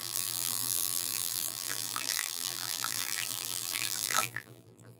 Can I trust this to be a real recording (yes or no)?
no